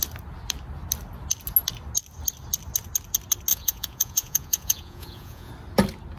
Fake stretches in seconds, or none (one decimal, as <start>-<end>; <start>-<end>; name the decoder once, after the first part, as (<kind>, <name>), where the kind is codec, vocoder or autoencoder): 3.5-5.5 (vocoder, Vocos)